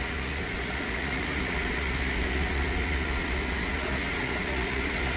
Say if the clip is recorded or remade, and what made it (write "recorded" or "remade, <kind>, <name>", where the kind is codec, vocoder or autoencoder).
remade, vocoder, Vocos